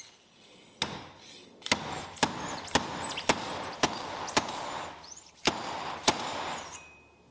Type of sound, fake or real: real